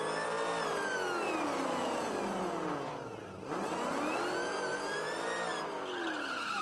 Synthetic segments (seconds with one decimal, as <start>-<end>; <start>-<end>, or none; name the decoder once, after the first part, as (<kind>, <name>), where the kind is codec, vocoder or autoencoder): none